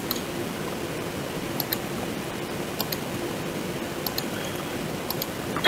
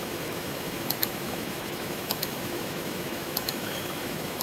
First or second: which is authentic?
first